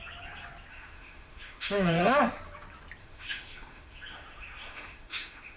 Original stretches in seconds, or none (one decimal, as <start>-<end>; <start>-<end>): 0.0-0.7; 2.2-3.0